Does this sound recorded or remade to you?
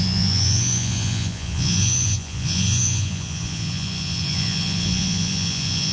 remade